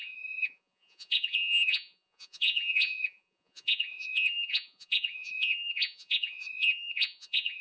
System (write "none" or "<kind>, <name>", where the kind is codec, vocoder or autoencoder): vocoder, Vocos